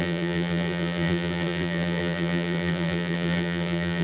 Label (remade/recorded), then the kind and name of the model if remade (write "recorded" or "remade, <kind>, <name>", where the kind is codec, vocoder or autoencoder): remade, vocoder, BigVGAN v2